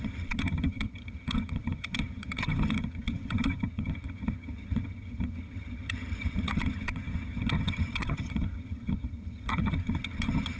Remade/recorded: remade